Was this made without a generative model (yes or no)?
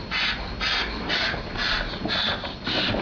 yes